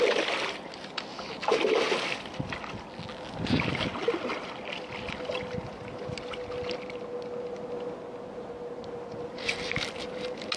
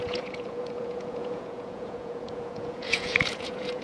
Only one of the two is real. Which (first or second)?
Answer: first